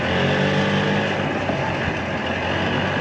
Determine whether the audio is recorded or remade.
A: recorded